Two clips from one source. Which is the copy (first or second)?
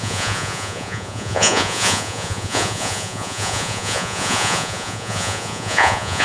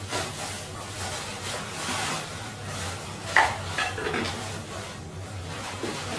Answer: first